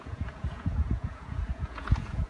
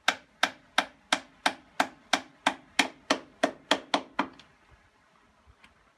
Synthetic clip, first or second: first